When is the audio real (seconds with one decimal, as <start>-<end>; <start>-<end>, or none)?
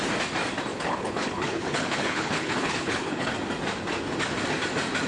0.0-0.7; 3.3-5.1